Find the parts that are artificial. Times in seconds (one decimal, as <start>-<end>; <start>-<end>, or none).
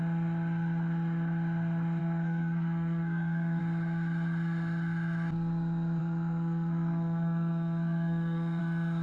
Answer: 2.0-3.6; 6.0-8.6